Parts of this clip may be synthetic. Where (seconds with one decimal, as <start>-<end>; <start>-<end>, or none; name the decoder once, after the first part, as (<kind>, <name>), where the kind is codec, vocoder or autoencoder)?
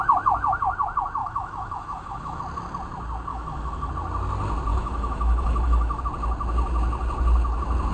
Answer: 1.2-2.4 (autoencoder, DAC-VAE); 3.3-3.9; 4.7-6.0